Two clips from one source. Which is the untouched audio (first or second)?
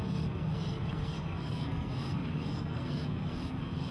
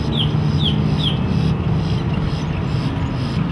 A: second